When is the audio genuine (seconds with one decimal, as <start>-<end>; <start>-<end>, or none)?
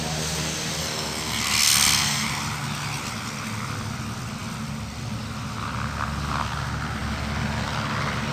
0.0-0.8; 2.3-8.3